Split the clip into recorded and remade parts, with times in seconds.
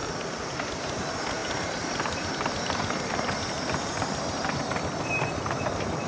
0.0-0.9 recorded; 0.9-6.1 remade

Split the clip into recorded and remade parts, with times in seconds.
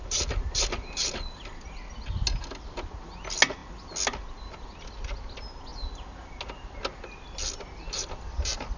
0.0-1.1 remade; 1.1-8.8 recorded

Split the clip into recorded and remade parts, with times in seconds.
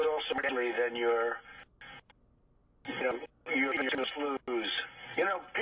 0.0-5.6 recorded